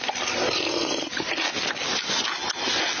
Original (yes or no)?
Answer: yes